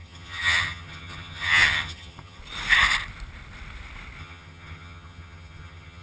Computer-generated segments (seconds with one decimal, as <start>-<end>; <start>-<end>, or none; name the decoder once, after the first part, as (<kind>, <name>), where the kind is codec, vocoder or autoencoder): 0.0-2.4 (vocoder, HiFi-GAN); 4.2-6.0

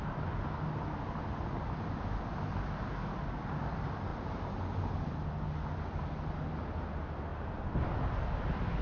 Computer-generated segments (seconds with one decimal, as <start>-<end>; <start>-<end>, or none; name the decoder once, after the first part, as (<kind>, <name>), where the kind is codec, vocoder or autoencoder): none

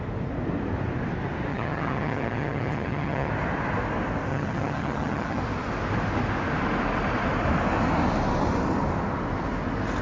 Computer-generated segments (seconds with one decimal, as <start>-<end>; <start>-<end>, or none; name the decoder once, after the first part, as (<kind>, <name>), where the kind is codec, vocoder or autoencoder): 1.5-3.3 (vocoder, HiFi-GAN); 4.3-5.4

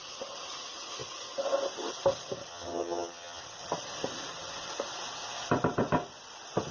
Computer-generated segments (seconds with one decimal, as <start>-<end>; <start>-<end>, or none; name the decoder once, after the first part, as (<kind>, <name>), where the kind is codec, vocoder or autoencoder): 2.5-3.4 (vocoder, HiFi-GAN)